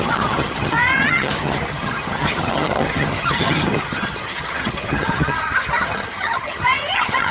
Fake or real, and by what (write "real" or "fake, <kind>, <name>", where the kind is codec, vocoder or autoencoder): fake, vocoder, HiFi-GAN